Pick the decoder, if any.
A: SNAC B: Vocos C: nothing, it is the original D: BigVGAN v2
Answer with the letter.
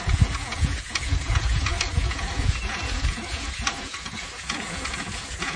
B